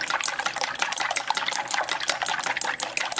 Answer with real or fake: real